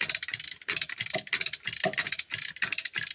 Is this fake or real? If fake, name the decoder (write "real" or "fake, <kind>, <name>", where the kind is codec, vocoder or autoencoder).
real